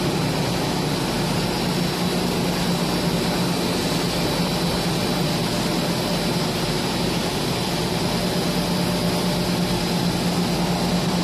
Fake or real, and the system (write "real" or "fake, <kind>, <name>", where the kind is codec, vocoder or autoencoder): real